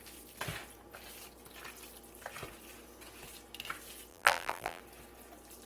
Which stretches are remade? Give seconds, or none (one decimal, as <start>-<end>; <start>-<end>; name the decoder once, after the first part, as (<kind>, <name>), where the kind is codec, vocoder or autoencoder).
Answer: 4.1-4.8 (vocoder, BigVGAN v2)